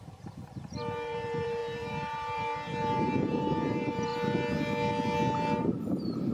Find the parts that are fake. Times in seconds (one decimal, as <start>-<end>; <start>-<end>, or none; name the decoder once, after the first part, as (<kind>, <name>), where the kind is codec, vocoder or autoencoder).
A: 0.0-4.1 (vocoder, BigVGAN v2); 5.7-6.3